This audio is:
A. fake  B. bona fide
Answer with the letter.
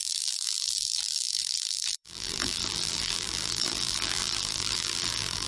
A